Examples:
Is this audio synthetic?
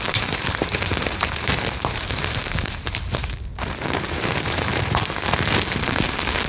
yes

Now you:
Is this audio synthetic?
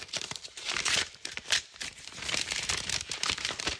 yes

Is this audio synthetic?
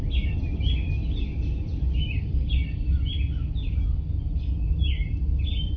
no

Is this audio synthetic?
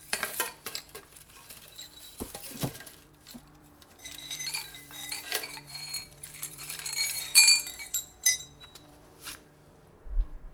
yes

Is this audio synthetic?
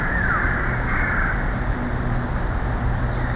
no